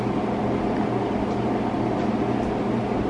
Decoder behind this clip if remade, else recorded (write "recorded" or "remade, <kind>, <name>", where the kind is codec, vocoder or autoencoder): recorded